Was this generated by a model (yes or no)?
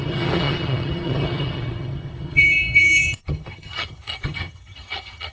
yes